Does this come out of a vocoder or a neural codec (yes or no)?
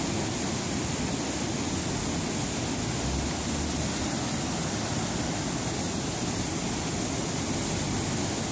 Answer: no